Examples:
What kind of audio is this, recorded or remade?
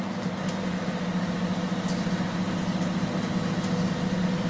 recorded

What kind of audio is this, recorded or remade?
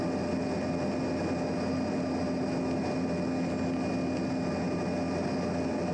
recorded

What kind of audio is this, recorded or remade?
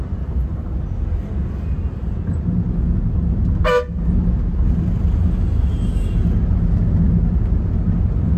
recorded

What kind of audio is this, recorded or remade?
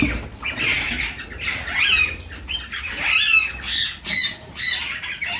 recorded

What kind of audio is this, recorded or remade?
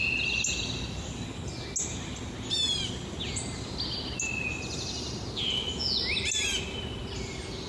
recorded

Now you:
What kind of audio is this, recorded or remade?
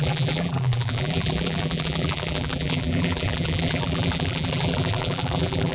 remade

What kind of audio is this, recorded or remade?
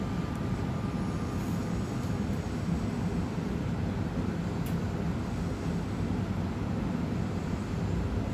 recorded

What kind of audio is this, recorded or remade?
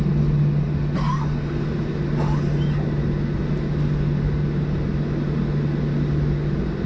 recorded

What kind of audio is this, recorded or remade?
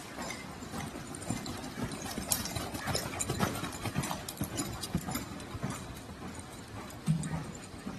recorded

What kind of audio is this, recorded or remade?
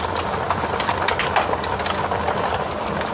recorded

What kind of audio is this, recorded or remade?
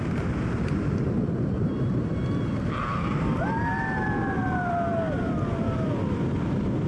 remade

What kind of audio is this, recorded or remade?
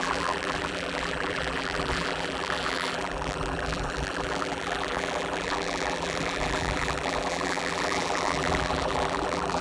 remade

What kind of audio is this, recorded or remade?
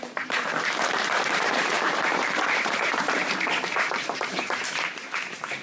remade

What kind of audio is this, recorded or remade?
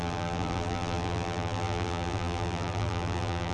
remade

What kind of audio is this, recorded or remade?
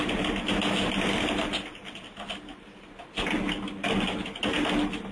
recorded